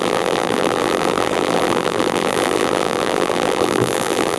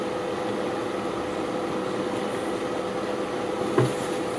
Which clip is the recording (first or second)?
second